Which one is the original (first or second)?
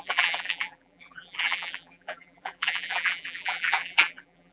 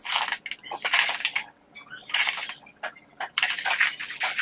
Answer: second